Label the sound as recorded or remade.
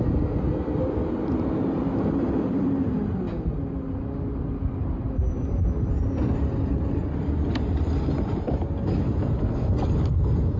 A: recorded